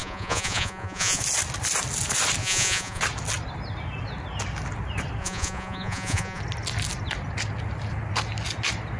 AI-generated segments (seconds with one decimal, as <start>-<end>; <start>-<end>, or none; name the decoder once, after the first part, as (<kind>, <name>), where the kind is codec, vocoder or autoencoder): 0.0-1.2 (vocoder, Vocos); 2.4-3.0; 5.2-6.4

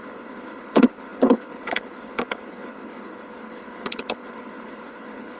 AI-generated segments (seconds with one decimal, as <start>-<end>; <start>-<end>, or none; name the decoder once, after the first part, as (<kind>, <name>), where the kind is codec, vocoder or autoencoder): 0.0-5.4 (codec, HILCodec)

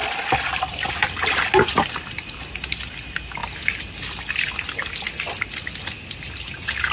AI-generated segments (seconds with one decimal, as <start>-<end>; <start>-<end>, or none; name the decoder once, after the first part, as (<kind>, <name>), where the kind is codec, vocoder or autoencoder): none

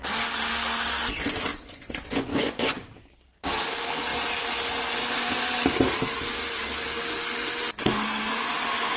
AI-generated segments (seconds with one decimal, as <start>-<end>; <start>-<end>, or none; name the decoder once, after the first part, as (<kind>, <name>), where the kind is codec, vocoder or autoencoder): 1.5-2.9 (vocoder, Vocos)

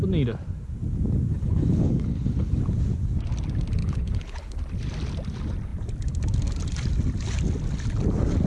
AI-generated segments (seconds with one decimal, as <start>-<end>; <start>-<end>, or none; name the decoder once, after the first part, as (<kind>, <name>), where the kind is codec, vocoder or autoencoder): 1.3-2.6 (codec, HILCodec); 3.8-4.6

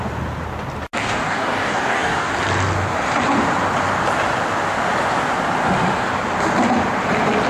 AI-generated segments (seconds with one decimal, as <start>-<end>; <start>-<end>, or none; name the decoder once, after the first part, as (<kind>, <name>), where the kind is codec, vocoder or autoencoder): 1.0-2.3 (codec, DAC)

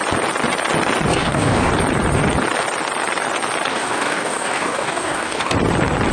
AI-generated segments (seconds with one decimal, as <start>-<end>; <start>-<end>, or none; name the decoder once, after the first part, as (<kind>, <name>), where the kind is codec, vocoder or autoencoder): 1.1-1.7 (codec, DAC); 3.7-5.5